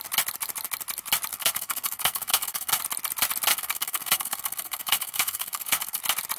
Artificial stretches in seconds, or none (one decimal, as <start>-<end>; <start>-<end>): 1.3-2.8; 3.5-6.0